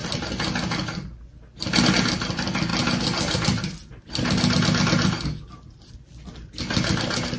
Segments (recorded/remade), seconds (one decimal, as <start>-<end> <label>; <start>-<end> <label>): 0.0-7.4 recorded